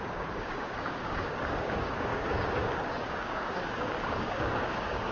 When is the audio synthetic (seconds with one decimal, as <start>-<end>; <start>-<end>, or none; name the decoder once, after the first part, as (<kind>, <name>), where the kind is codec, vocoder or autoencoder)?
0.0-5.1 (codec, DAC)